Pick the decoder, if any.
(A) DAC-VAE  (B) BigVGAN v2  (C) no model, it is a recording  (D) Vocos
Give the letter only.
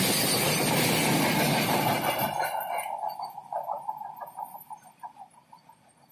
C